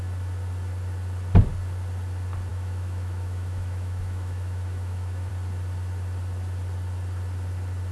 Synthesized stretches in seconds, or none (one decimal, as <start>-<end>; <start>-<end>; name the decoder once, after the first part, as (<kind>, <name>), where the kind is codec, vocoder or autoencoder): 2.5-5.3 (autoencoder, DAC-VAE)